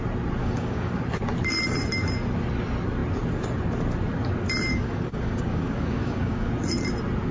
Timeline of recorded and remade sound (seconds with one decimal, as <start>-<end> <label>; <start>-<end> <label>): 0.0-0.4 recorded; 0.4-1.0 remade; 1.0-4.7 recorded; 4.7-6.5 remade; 6.5-7.3 recorded